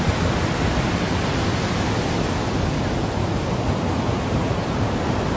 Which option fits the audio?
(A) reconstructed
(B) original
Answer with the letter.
A